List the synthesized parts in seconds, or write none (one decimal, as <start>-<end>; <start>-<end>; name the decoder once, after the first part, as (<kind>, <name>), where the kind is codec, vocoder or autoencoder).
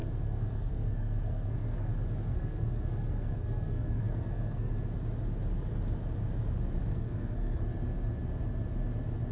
0.0-1.9 (codec, SNAC); 2.3-4.7; 6.9-7.6